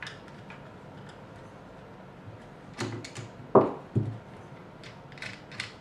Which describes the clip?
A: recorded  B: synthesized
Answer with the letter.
A